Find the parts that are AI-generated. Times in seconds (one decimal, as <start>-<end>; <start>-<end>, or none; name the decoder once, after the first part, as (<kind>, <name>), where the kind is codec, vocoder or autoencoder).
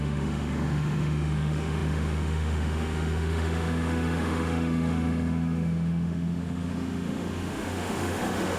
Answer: 0.0-8.6 (autoencoder, DAC-VAE)